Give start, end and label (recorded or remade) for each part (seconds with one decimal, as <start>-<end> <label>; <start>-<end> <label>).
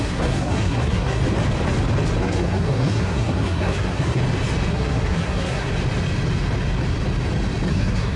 0.0-1.2 remade; 1.2-2.2 recorded; 2.2-4.2 remade; 4.2-4.7 recorded; 4.7-5.7 remade; 5.7-7.7 recorded; 7.7-8.2 remade